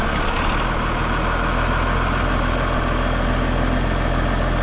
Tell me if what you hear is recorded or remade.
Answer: recorded